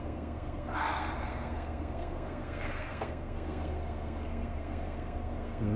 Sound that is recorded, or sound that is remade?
remade